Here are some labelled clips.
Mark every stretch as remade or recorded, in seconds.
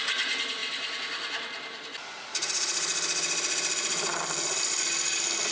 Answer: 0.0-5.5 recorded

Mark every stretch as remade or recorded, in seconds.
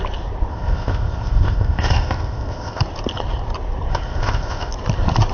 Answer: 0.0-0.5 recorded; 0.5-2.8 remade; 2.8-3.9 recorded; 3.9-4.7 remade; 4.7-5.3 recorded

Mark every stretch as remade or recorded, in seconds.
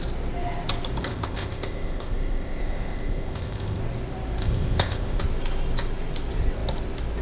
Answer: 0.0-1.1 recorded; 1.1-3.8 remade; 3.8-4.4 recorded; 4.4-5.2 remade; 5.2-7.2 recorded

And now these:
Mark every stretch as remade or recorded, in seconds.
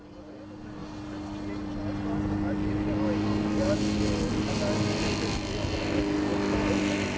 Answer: 0.0-7.2 recorded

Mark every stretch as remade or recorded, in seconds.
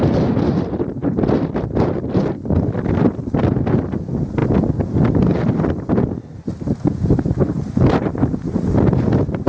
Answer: 0.0-9.5 recorded